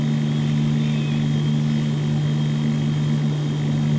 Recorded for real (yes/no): yes